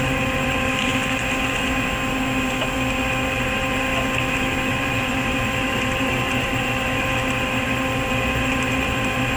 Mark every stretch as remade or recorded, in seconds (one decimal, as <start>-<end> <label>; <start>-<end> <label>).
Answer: 0.0-0.9 remade; 0.9-3.3 recorded; 3.3-3.9 remade; 3.9-4.7 recorded; 4.7-9.4 remade